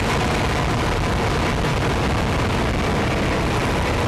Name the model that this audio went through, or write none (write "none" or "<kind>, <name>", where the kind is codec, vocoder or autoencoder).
none